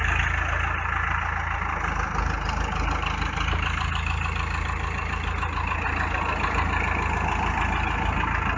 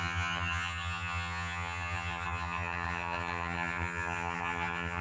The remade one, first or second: second